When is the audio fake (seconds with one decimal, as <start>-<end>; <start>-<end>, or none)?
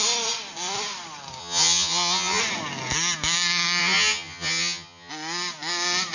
1.4-2.4; 3.8-5.1